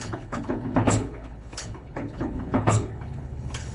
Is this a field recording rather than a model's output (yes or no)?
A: no